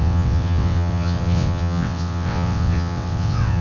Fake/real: fake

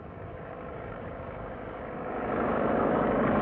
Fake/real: fake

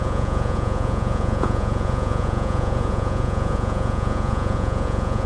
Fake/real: fake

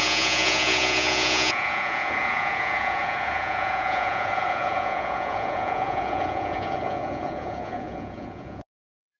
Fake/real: fake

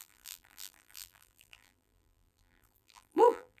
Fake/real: fake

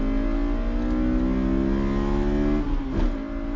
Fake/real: real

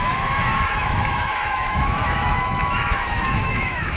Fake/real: fake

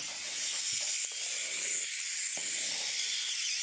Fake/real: real